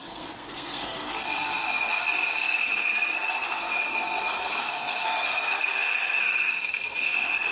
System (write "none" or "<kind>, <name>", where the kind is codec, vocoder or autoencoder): codec, SNAC